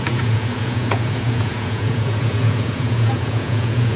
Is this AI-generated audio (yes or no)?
yes